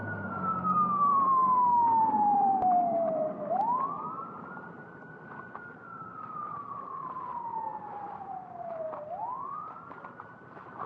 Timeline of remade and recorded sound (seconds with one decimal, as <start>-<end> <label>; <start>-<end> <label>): 0.0-1.4 remade; 1.4-2.0 recorded; 2.0-10.9 remade